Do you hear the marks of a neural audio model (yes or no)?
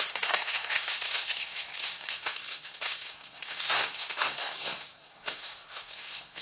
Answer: yes